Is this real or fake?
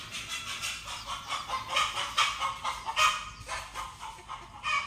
real